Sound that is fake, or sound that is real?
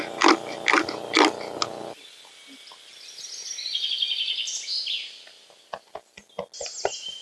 real